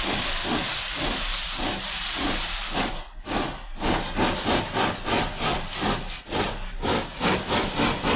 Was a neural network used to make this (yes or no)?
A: no